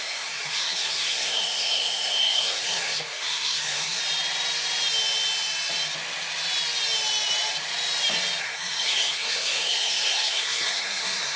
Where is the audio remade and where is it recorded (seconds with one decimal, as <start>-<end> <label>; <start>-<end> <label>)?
0.0-4.0 remade; 4.0-8.4 recorded; 8.4-11.4 remade